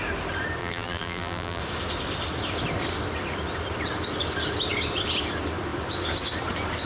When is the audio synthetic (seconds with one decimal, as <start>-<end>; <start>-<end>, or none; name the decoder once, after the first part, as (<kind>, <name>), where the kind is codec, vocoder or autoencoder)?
0.6-1.6 (vocoder, BigVGAN v2)